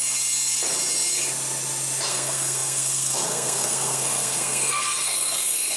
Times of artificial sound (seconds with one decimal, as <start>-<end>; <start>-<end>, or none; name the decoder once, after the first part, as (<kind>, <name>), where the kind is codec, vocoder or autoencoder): 2.1-5.8 (codec, SNAC)